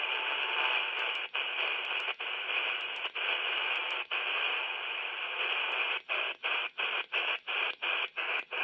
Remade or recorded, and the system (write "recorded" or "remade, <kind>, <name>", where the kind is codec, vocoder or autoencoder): remade, vocoder, BigVGAN v2